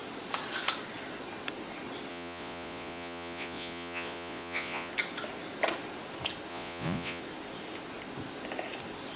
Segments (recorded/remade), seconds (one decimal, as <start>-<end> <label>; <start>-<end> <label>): 0.0-2.1 recorded; 2.1-4.9 remade; 4.9-6.5 recorded; 6.5-7.2 remade; 7.2-9.2 recorded